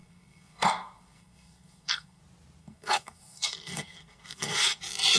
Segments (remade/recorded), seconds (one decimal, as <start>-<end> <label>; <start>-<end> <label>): 0.0-2.2 remade; 2.2-2.6 recorded; 2.6-4.8 remade; 4.8-5.2 recorded